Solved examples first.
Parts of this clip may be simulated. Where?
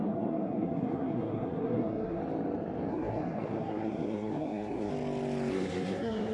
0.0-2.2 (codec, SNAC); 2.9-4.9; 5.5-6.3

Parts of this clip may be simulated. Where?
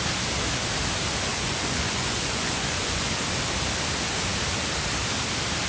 1.3-3.1 (vocoder, Vocos)